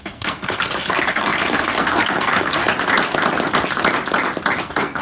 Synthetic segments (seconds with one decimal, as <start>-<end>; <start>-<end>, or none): 0.0-2.6; 4.6-5.0